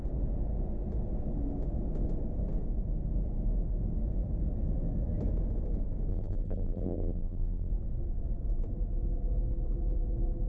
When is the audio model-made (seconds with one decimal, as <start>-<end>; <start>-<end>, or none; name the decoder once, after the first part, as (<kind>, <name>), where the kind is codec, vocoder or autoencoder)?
6.1-7.7 (vocoder, BigVGAN v2)